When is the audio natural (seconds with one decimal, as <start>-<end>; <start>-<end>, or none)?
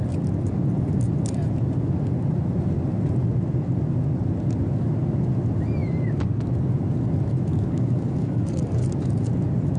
0.0-7.5; 8.8-9.8